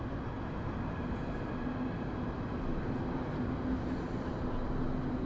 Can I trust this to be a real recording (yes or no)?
yes